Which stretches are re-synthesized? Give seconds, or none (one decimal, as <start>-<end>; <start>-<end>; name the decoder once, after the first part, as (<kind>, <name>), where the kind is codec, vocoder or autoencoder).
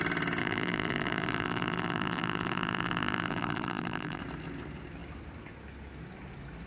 0.4-4.2 (vocoder, BigVGAN v2)